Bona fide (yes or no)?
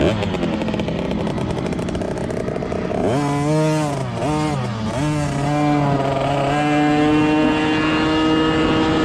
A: yes